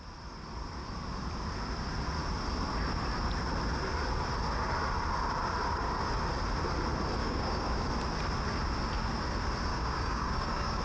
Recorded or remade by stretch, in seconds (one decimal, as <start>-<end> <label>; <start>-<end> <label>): 0.0-7.2 recorded; 7.2-7.9 remade; 7.9-9.7 recorded; 9.7-10.8 remade